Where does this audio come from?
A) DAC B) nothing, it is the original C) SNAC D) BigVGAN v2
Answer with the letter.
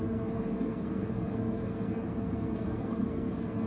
C